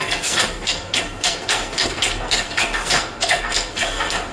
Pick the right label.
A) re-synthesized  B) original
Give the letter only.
A